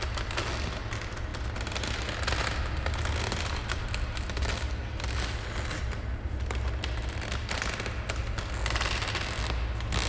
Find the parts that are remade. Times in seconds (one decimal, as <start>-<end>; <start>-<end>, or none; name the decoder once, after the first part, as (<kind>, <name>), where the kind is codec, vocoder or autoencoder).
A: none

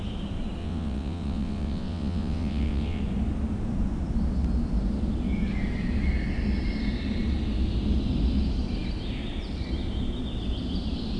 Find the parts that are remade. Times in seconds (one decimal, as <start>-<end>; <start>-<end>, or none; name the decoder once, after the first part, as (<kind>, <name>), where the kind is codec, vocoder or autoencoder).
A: 0.6-3.0 (vocoder, WaveNeXt)

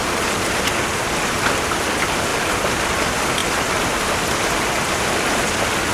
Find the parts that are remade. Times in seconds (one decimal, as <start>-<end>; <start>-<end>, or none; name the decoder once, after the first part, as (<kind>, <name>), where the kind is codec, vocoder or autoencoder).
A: 1.0-3.4 (vocoder, BigVGAN v2); 5.1-5.9

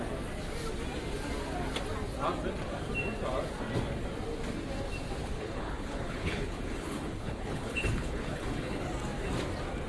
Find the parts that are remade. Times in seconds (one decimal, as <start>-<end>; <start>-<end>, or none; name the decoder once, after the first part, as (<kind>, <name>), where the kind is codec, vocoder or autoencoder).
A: 5.2-8.8 (codec, HILCodec)

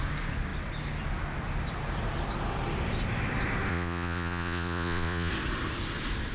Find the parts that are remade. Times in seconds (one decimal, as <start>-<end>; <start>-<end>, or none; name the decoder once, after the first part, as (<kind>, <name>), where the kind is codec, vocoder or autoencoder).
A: 3.7-5.3 (vocoder, Vocos)

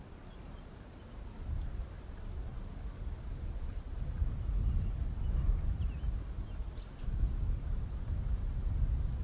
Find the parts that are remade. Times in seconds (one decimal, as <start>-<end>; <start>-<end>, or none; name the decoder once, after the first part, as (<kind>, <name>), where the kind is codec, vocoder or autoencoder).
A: none

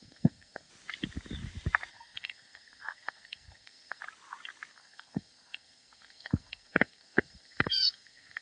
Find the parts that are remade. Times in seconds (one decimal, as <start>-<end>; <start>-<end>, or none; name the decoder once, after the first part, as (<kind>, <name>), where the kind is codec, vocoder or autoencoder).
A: 0.0-0.7 (codec, SNAC); 1.9-4.0; 4.7-8.4

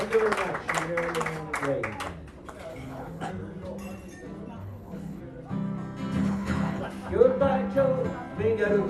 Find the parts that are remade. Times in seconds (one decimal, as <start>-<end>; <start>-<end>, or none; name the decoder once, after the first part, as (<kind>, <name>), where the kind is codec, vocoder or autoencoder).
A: 2.7-3.3 (codec, HILCodec); 4.6-5.2; 6.2-6.8